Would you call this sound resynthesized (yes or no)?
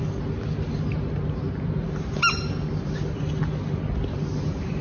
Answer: no